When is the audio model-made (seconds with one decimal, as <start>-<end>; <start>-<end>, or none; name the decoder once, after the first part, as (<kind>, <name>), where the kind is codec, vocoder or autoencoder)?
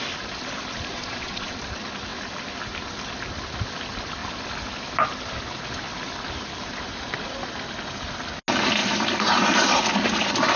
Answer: 0.9-1.6 (vocoder, Vocos)